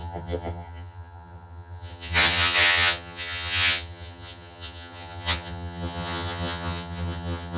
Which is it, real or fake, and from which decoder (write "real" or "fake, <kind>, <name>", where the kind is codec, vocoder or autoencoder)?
fake, vocoder, HiFi-GAN